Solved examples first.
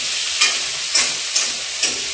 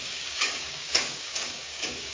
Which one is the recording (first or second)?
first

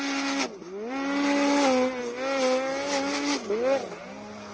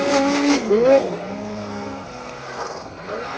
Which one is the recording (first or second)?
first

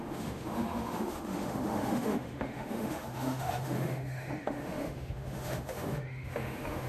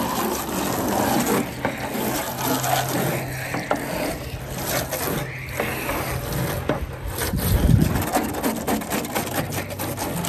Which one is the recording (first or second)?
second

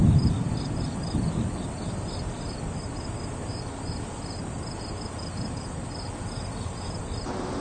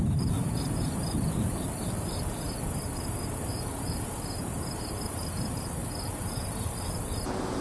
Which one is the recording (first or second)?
first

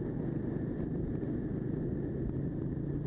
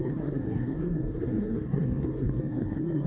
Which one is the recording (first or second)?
first